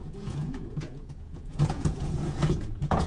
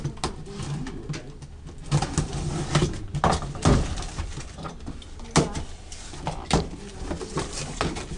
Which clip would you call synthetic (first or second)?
first